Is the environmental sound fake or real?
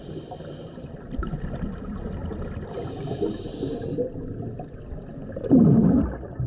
real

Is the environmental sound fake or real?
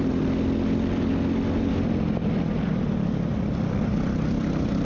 real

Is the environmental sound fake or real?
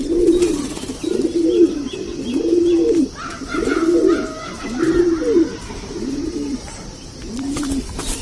fake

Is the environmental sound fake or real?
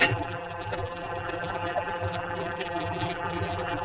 fake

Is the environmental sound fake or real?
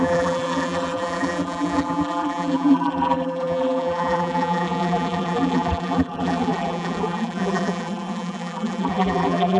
fake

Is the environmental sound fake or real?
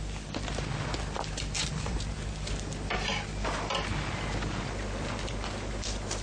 real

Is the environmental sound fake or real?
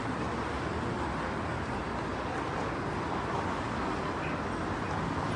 real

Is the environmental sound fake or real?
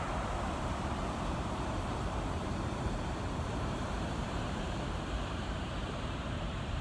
fake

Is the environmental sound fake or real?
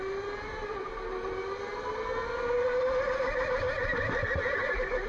real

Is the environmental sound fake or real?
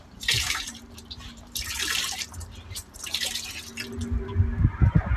fake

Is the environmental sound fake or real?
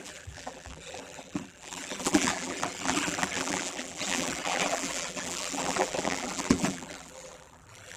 fake